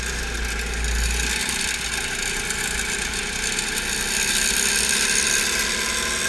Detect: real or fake real